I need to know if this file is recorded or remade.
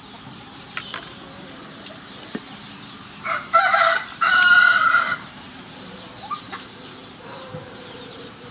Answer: remade